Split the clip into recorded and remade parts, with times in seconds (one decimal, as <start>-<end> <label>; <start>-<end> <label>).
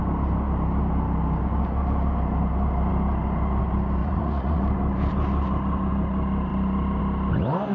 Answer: 0.0-4.0 recorded; 4.0-4.6 remade; 4.6-7.7 recorded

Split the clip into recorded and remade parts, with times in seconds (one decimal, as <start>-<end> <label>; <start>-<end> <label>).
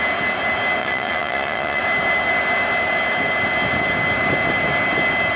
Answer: 0.0-0.8 recorded; 0.8-1.8 remade; 1.8-5.4 recorded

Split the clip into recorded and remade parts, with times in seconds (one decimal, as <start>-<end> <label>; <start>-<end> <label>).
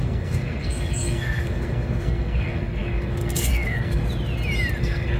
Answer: 0.0-4.0 remade; 4.0-4.8 recorded; 4.8-5.2 remade